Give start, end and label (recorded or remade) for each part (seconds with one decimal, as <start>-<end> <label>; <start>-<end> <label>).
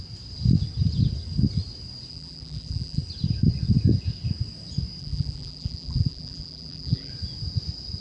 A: 0.0-2.1 recorded; 2.1-3.0 remade; 3.0-5.0 recorded; 5.0-7.1 remade; 7.1-8.0 recorded